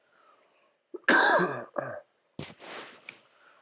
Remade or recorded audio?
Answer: recorded